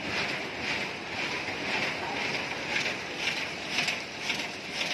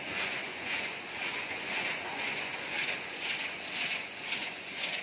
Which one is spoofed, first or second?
second